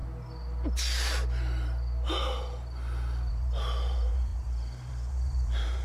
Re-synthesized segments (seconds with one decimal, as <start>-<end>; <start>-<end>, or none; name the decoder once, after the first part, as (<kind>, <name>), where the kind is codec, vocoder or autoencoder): 3.3-5.8 (vocoder, BigVGAN v2)